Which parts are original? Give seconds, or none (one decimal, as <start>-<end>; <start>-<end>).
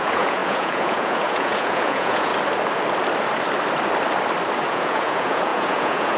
2.3-4.7